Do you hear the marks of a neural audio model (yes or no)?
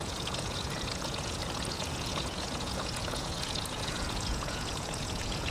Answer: yes